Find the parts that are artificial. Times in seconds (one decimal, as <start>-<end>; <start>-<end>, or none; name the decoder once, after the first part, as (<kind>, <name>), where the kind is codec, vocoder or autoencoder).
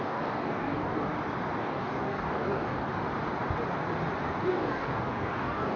0.0-1.1 (codec, DAC); 1.6-2.9; 4.5-5.8